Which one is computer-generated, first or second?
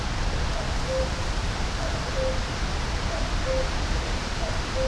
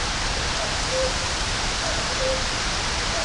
second